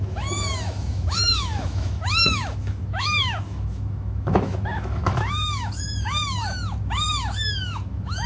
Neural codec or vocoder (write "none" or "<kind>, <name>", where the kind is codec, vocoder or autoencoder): autoencoder, DAC-VAE